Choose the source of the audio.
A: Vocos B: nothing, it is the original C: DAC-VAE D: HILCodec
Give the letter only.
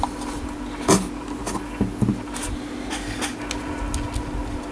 B